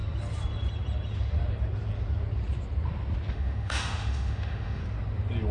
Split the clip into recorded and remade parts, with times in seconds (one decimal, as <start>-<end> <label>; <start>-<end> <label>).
0.0-3.3 recorded; 3.3-4.8 remade; 4.8-5.5 recorded